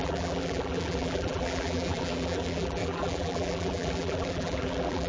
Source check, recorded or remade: remade